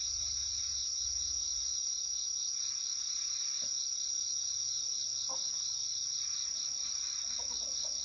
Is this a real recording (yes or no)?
yes